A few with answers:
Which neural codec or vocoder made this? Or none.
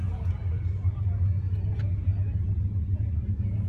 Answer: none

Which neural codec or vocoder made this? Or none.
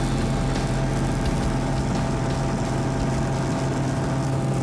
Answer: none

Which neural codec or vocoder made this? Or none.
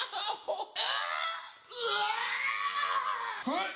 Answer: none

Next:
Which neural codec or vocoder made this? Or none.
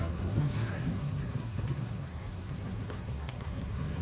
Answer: codec, SNAC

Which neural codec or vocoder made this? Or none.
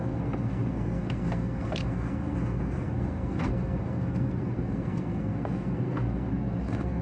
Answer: codec, SNAC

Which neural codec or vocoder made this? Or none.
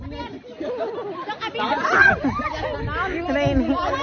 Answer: none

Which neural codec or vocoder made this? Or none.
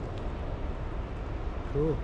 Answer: none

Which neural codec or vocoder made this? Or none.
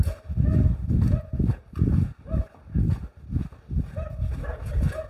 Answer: none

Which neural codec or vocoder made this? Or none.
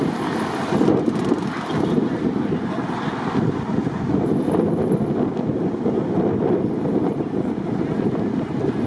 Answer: none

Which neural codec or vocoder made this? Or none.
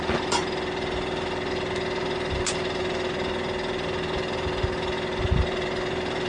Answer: none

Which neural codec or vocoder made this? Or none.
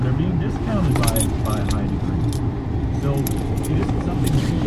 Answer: none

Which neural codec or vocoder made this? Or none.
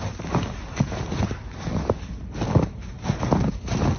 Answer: none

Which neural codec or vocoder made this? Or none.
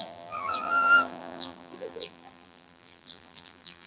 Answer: vocoder, BigVGAN v2